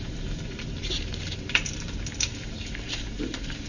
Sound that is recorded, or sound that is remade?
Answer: remade